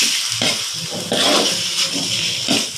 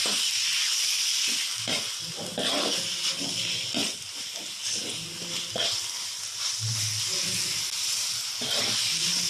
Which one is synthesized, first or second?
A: first